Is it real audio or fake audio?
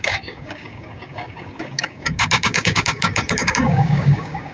fake